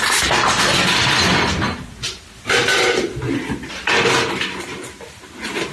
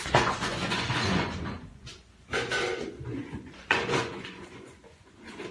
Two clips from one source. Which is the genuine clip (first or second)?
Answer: first